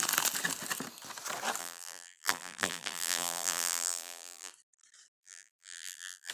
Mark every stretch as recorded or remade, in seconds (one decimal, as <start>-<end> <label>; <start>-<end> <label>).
0.0-1.6 recorded; 1.6-4.5 remade; 4.5-5.2 recorded; 5.2-6.3 remade